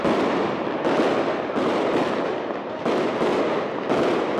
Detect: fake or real real